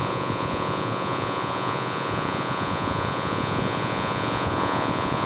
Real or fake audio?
fake